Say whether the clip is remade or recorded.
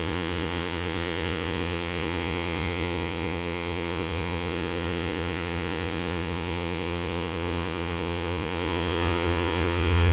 remade